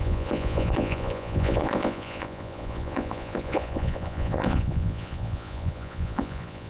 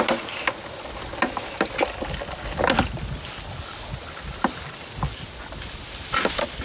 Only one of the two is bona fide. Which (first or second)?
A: second